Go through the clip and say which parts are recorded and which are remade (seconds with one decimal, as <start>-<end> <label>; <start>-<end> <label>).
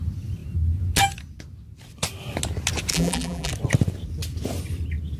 0.0-2.9 recorded; 2.9-3.5 remade; 3.5-5.2 recorded